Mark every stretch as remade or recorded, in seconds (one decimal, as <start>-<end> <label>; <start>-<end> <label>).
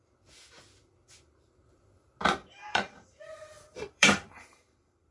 0.0-2.4 recorded; 2.4-5.1 remade